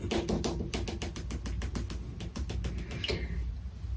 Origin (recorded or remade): recorded